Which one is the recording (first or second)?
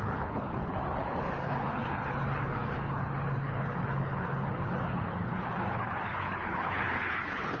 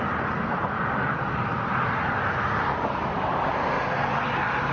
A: second